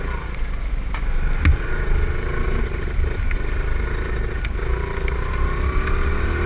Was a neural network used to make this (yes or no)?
no